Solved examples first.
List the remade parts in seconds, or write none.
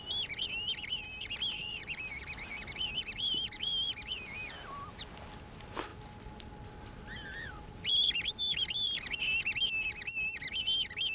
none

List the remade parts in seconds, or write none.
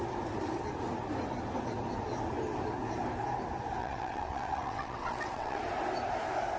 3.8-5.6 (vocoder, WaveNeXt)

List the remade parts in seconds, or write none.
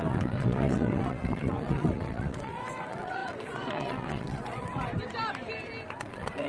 0.0-4.9 (vocoder, WaveNeXt); 6.0-6.5